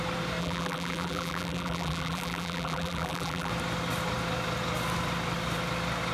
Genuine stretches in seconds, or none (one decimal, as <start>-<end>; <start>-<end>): 0.0-0.4; 3.5-6.1